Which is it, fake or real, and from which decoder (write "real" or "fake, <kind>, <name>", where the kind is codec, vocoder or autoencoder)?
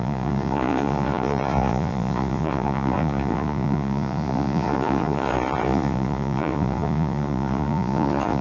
fake, vocoder, Vocos